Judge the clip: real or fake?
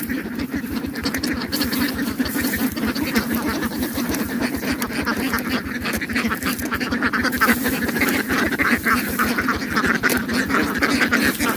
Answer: fake